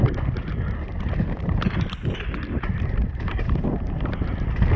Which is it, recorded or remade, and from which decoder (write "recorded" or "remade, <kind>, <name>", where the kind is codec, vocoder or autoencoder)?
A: recorded